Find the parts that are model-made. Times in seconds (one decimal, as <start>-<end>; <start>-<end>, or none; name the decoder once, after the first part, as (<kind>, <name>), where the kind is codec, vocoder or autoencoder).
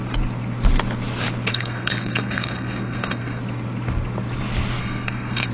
1.5-3.4 (codec, SNAC); 4.8-5.5